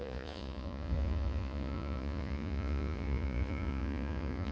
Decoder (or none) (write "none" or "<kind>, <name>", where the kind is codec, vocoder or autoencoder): vocoder, Vocos